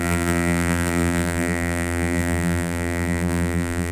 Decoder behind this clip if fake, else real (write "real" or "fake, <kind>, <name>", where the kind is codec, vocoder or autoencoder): fake, vocoder, BigVGAN v2